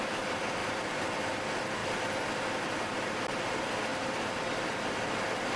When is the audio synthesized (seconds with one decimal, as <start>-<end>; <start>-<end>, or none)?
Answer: 0.6-1.1; 3.9-4.5